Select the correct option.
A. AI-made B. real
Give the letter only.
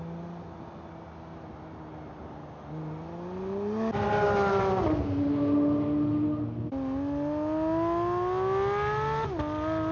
B